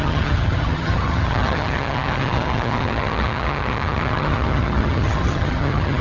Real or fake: fake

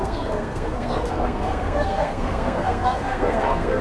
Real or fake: fake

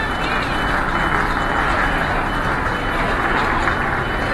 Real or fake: real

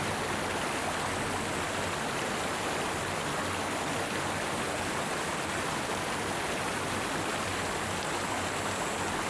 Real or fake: real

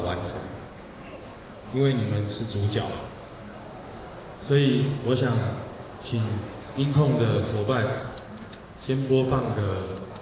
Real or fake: fake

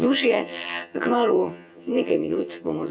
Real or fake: fake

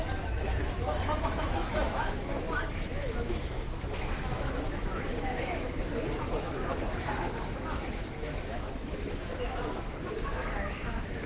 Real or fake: fake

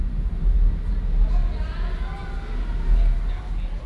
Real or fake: real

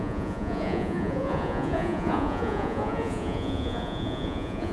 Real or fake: fake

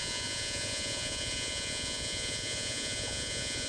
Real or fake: fake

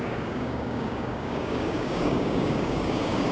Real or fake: fake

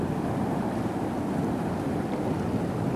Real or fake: real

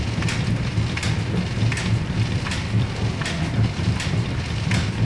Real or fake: real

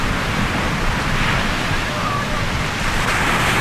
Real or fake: real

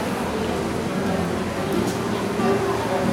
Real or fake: real